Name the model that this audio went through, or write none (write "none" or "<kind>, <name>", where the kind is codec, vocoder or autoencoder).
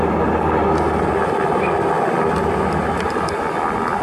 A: none